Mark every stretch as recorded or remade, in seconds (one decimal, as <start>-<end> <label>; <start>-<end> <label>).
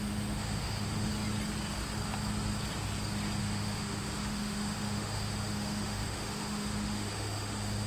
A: 0.0-1.1 remade; 1.1-3.4 recorded; 3.4-7.9 remade